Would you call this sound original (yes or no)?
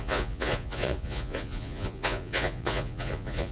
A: no